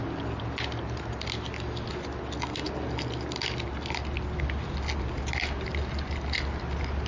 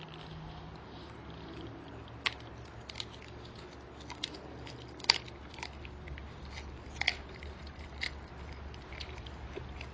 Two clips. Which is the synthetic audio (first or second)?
second